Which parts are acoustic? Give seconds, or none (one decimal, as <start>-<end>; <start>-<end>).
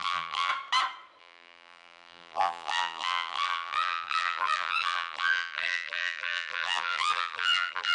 0.5-1.2